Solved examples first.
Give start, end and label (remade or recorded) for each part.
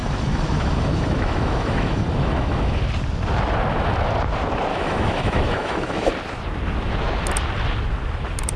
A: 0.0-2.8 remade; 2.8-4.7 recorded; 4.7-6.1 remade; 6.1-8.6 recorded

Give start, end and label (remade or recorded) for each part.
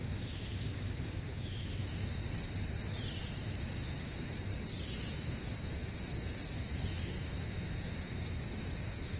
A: 0.0-2.2 remade; 2.2-3.4 recorded; 3.4-4.5 remade; 4.5-5.1 recorded; 5.1-9.2 remade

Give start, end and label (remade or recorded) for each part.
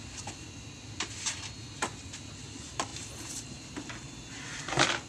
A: 0.0-5.1 recorded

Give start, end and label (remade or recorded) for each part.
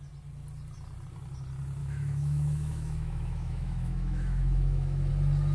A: 0.0-1.8 recorded; 1.8-5.1 remade; 5.1-5.5 recorded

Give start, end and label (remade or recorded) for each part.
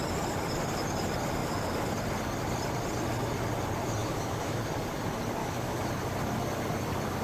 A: 0.0-4.0 recorded; 4.0-4.6 remade; 4.6-5.4 recorded; 5.4-5.9 remade; 5.9-7.2 recorded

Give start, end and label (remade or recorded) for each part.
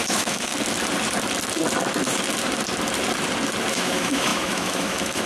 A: 0.0-0.5 remade; 0.5-3.7 recorded; 3.7-5.3 remade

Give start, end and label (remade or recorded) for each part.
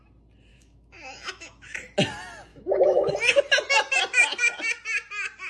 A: 0.0-0.5 recorded; 0.5-1.8 remade; 1.8-2.5 recorded; 2.5-3.1 remade; 3.1-5.5 recorded